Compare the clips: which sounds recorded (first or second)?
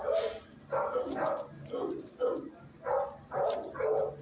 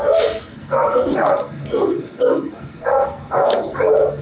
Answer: first